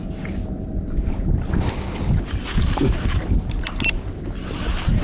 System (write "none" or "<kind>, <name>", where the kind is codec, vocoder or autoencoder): none